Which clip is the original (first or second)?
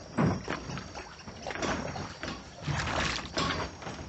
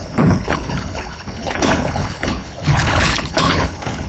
first